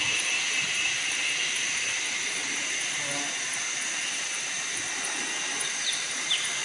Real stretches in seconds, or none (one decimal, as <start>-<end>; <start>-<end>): 0.0-6.6